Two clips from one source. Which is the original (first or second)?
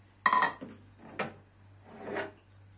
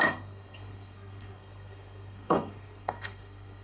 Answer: first